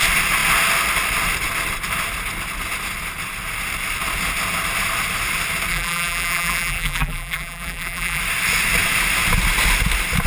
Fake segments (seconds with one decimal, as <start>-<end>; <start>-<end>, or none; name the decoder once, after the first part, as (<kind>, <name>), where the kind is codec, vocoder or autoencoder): 5.7-8.2 (vocoder, BigVGAN v2)